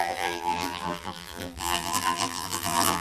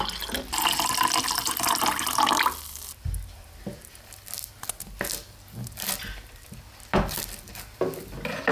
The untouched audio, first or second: second